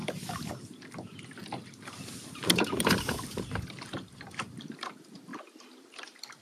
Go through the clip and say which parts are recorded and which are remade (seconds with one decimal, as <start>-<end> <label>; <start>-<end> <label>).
0.0-6.4 remade